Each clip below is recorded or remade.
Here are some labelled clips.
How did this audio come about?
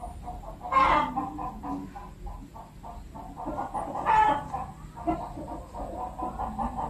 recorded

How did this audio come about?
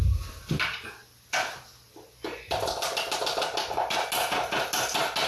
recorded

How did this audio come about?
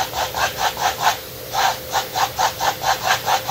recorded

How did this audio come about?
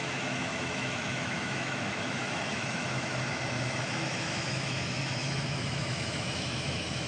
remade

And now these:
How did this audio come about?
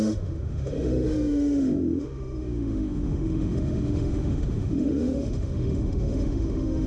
remade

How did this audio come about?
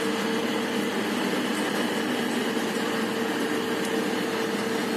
recorded